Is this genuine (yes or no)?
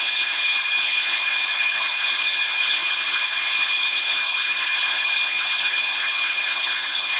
no